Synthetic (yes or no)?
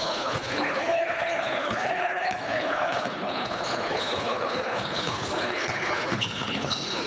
yes